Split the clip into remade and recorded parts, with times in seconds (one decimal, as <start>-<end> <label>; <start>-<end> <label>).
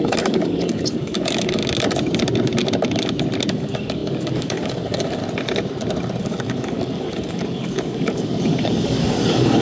0.0-1.6 remade; 1.6-3.5 recorded; 3.5-5.2 remade; 5.2-6.2 recorded; 6.2-9.6 remade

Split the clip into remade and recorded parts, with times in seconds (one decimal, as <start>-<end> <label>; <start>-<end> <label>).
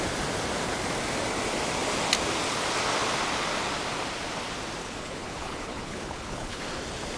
0.0-4.8 recorded; 4.8-6.6 remade; 6.6-7.2 recorded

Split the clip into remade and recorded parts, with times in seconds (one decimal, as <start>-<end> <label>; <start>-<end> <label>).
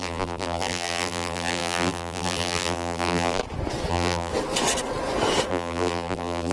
0.0-3.4 remade; 3.4-3.9 recorded; 3.9-4.3 remade; 4.3-5.5 recorded; 5.5-6.5 remade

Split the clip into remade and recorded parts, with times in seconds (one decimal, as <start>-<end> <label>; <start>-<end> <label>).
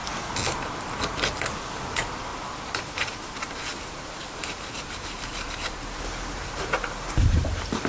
0.0-1.9 recorded; 1.9-7.9 remade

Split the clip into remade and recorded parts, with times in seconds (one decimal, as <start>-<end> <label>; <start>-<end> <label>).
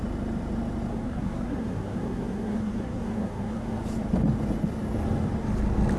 0.0-0.9 recorded; 0.9-3.8 remade; 3.8-6.0 recorded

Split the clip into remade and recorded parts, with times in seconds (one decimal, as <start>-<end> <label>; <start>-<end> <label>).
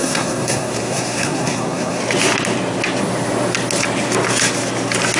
0.0-2.0 remade; 2.0-5.2 recorded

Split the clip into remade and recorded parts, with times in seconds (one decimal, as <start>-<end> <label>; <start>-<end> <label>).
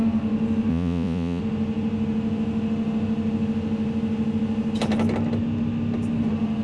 0.0-0.7 recorded; 0.7-1.4 remade; 1.4-6.6 recorded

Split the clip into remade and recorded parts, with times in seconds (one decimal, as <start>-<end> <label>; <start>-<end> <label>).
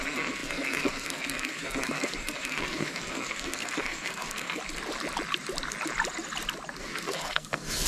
0.0-4.6 remade; 4.6-6.8 recorded; 6.8-7.9 remade